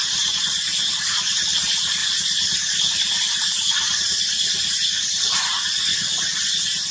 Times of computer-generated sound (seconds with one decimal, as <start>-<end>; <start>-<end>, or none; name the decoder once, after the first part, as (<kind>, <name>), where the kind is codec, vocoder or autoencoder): 2.0-4.7 (vocoder, BigVGAN v2); 5.9-6.9